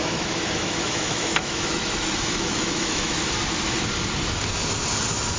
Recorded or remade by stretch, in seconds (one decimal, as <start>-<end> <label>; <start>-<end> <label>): 0.0-3.2 remade; 3.2-5.4 recorded